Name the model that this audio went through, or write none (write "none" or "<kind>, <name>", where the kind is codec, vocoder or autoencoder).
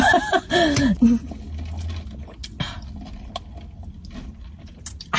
none